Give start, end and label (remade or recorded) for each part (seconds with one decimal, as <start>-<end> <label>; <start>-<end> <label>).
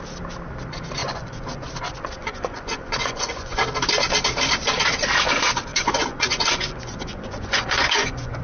0.0-1.0 recorded; 1.0-1.7 remade; 1.7-2.2 recorded; 2.2-3.6 remade; 3.6-5.7 recorded; 5.7-8.4 remade